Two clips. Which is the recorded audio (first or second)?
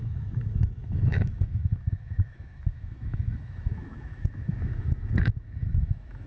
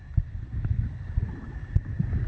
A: second